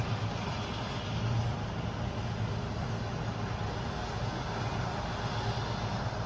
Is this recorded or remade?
recorded